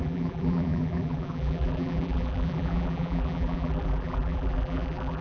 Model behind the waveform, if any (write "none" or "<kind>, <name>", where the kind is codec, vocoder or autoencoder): vocoder, BigVGAN v2